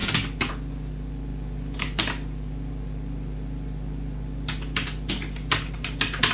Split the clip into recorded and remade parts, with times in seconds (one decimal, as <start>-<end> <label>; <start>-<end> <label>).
0.0-6.3 recorded